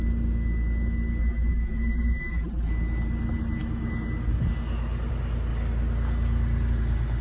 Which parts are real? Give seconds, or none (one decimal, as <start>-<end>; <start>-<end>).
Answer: 0.0-1.2; 2.7-7.2